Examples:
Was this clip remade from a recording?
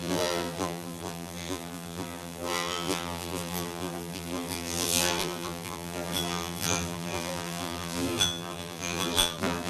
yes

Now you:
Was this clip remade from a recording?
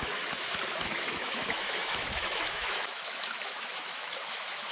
yes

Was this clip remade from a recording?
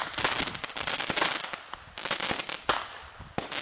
no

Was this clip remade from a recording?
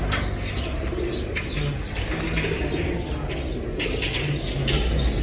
no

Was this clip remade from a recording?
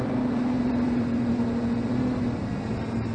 yes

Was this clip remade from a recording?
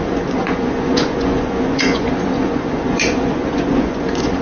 yes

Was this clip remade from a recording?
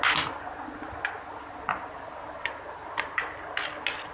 no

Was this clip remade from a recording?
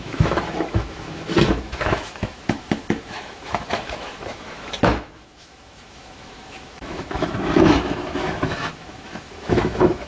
yes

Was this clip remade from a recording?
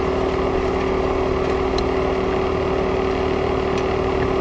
no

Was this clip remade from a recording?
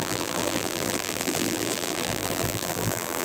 yes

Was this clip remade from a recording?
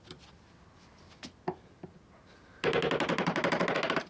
no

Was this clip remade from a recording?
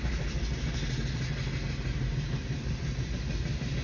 no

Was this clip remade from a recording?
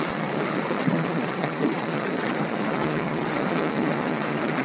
yes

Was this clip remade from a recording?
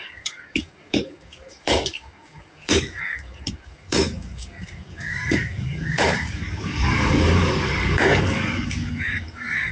yes